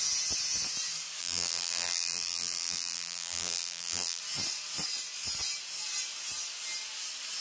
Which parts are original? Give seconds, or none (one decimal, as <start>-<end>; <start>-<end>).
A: 0.0-1.2; 4.2-7.4